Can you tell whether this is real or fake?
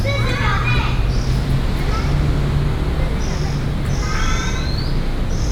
real